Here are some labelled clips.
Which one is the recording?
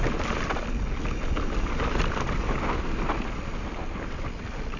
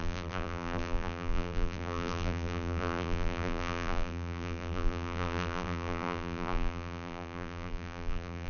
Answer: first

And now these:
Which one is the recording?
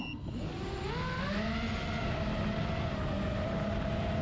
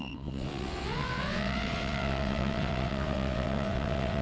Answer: first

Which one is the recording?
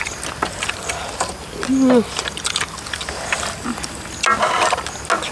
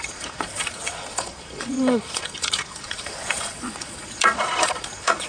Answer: first